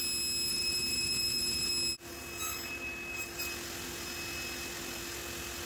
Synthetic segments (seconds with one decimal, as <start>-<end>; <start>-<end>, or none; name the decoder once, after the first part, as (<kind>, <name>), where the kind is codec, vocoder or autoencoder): 0.5-1.7 (vocoder, BigVGAN v2)